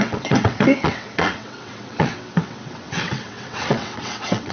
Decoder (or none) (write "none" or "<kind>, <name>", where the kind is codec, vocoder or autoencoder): vocoder, WaveNeXt